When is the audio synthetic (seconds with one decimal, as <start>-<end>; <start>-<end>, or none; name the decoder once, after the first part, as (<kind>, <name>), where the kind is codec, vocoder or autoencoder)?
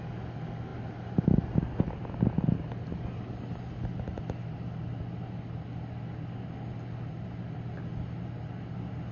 none